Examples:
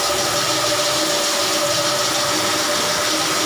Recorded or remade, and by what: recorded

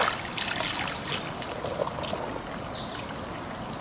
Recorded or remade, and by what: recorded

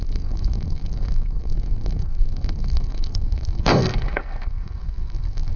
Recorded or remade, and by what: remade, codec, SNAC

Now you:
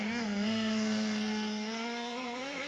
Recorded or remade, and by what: remade, codec, SNAC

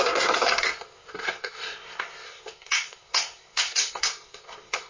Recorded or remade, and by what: remade, codec, SNAC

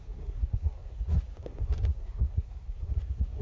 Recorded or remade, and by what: remade, codec, SNAC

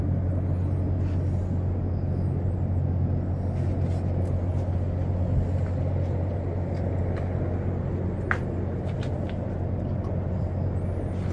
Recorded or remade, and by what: recorded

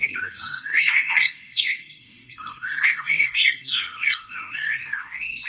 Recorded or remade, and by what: remade, codec, SNAC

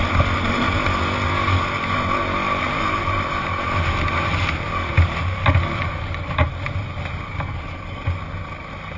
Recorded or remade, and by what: recorded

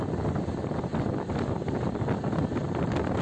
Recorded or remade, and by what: recorded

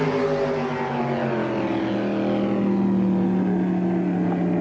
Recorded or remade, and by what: recorded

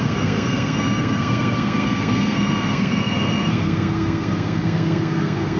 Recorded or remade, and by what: remade, codec, SNAC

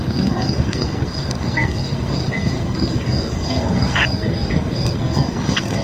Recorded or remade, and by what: remade, codec, SNAC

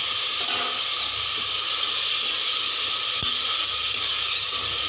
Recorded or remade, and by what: recorded